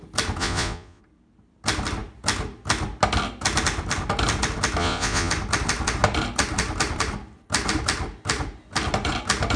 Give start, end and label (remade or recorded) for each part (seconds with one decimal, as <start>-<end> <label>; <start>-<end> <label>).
0.0-0.4 recorded; 0.4-1.0 remade; 1.0-4.8 recorded; 4.8-5.3 remade; 5.3-9.6 recorded